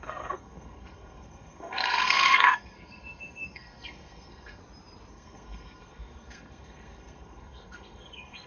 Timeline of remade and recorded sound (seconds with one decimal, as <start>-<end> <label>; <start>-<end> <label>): 0.0-4.6 remade; 4.6-5.1 recorded; 5.1-8.5 remade